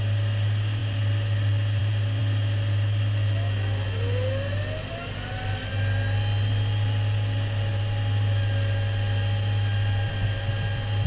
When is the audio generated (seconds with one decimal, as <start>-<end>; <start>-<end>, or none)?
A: none